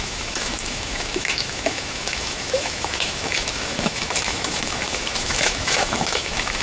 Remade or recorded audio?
remade